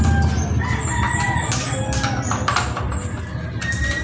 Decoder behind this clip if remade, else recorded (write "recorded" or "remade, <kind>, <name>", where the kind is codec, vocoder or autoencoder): recorded